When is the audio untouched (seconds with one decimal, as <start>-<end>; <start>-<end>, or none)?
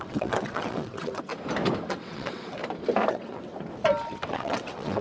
1.3-1.9; 2.6-3.1; 3.5-4.3